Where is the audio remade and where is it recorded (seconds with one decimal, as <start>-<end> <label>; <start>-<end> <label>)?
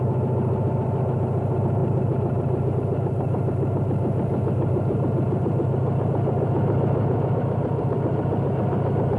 0.0-9.2 recorded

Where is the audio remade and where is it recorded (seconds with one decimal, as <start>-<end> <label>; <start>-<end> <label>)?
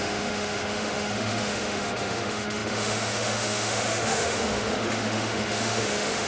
0.0-6.3 remade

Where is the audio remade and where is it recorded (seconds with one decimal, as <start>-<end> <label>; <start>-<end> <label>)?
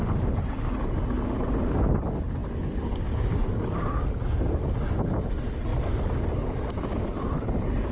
0.0-7.9 recorded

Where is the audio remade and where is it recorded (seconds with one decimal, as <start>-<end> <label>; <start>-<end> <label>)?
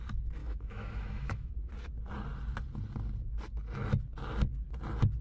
0.0-0.4 recorded; 0.4-1.5 remade; 1.5-5.2 recorded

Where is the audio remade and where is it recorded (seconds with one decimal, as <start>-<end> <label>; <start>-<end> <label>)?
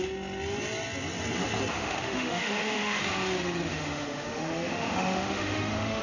0.0-1.7 recorded; 1.7-3.0 remade; 3.0-3.7 recorded; 3.7-6.0 remade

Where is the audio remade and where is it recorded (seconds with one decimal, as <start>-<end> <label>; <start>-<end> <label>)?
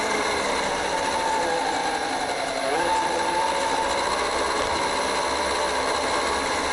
0.0-6.7 recorded